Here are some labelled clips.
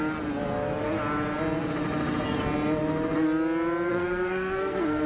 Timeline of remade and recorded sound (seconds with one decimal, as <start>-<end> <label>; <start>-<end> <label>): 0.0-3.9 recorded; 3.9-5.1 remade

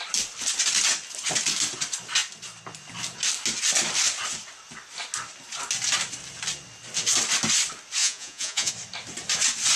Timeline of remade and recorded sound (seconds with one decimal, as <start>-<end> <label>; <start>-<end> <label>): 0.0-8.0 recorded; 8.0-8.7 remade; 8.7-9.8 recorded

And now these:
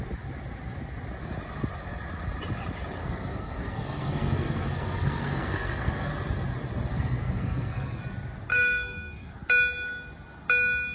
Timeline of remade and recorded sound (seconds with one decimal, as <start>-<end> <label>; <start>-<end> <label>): 0.0-3.0 recorded; 3.0-6.1 remade; 6.1-6.9 recorded; 6.9-8.0 remade; 8.0-8.5 recorded; 8.5-9.4 remade; 9.4-10.9 recorded

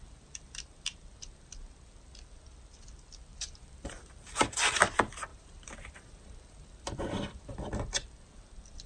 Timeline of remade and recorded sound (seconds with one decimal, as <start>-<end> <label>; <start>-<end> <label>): 0.0-3.3 recorded; 3.3-4.1 remade; 4.1-5.3 recorded; 5.3-7.6 remade; 7.6-8.9 recorded

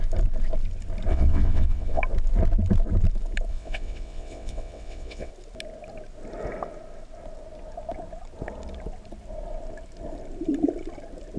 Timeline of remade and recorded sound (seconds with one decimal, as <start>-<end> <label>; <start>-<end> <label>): 0.0-1.1 recorded; 1.1-2.0 remade; 2.0-3.5 recorded; 3.5-5.3 remade; 5.3-11.4 recorded